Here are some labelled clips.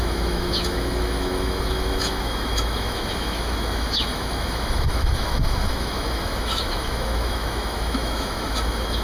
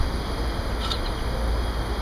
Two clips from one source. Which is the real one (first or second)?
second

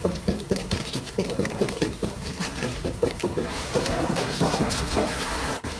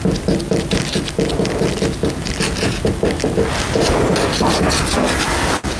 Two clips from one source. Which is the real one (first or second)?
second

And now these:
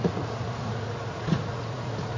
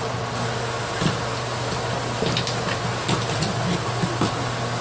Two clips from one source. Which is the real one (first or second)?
second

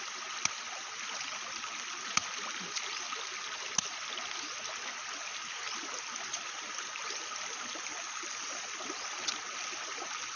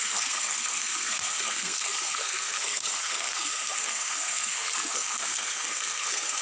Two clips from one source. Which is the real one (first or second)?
first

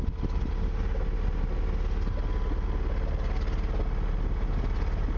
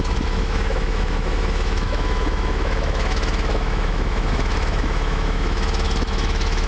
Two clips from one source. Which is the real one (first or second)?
first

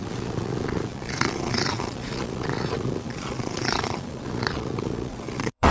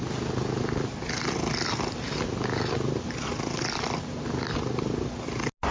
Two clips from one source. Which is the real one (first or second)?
second